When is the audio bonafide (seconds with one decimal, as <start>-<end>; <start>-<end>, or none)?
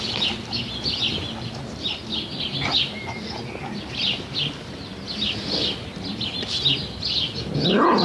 0.0-8.0